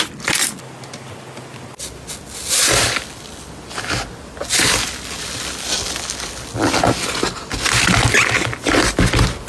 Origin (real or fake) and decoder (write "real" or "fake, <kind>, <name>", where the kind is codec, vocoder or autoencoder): real